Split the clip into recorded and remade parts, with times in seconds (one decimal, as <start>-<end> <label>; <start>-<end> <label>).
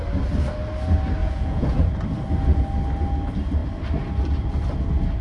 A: 0.0-1.2 recorded; 1.2-1.8 remade; 1.8-5.2 recorded